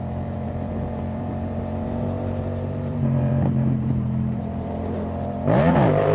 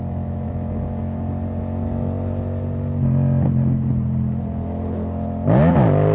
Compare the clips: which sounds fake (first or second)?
first